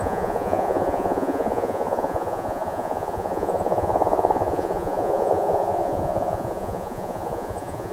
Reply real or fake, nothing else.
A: fake